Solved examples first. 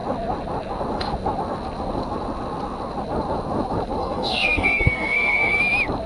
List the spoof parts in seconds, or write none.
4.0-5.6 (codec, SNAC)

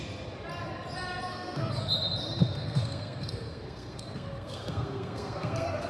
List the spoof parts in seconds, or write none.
1.3-1.8 (codec, SNAC); 2.4-5.9

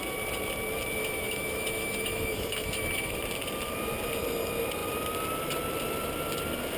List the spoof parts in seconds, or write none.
1.0-3.2 (autoencoder, DAC-VAE)

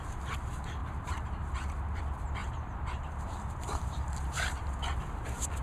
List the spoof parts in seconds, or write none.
0.8-2.0 (vocoder, BigVGAN v2); 2.4-4.8

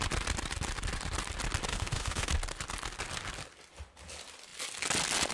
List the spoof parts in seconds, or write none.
1.7-2.3 (autoencoder, DAC-VAE)

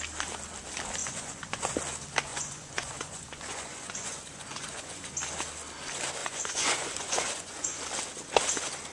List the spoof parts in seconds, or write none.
1.0-1.7 (vocoder, Vocos); 2.3-5.1; 6.2-7.8

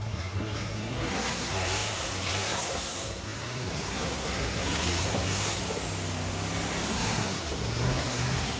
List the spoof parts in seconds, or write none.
0.0-5.6 (codec, SNAC); 6.9-8.6

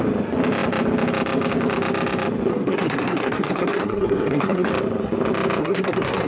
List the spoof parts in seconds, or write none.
2.5-4.7 (codec, SNAC); 5.6-6.3